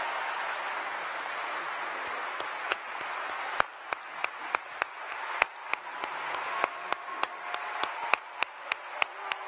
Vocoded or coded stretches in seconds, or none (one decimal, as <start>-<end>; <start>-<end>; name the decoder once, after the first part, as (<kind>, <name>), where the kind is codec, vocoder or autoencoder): none